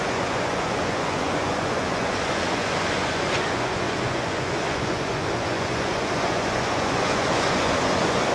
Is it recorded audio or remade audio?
remade